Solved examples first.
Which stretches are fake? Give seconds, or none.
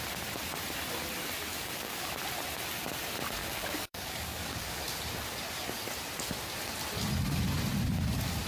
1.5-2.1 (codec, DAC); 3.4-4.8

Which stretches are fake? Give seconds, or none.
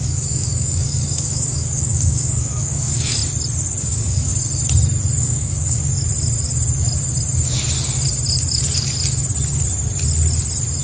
0.0-3.2 (codec, DAC); 3.8-4.3; 5.2-5.8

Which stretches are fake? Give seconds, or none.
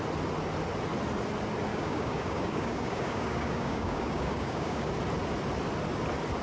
1.7-4.9 (codec, DAC)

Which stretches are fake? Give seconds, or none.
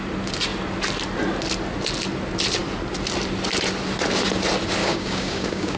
4.8-5.8 (codec, DAC)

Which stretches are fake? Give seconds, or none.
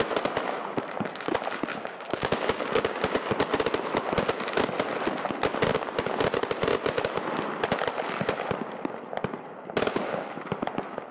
1.7-3.3 (codec, DAC)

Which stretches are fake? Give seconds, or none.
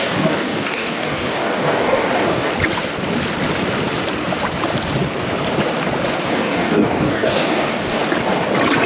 0.0-2.5 (codec, DAC); 6.3-8.0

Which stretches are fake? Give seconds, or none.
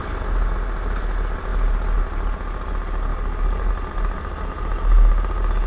3.1-3.7 (codec, DAC)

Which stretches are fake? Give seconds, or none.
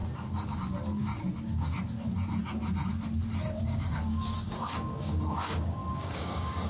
3.6-6.7 (codec, DAC)